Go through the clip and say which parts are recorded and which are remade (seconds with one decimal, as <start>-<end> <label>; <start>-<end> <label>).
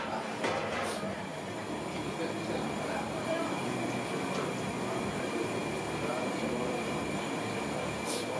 0.0-8.4 recorded